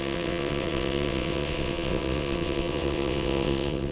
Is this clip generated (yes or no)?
yes